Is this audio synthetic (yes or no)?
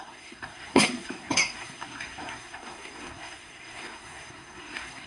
yes